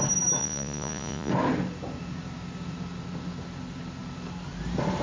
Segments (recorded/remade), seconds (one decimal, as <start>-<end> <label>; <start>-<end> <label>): 0.0-0.4 recorded; 0.4-1.3 remade; 1.3-5.0 recorded